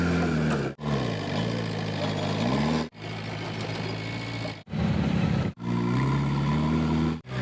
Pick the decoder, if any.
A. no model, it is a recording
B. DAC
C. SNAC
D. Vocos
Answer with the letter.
A